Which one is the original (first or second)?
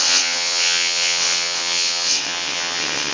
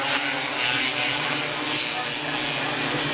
second